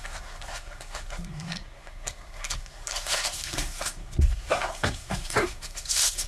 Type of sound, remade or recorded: remade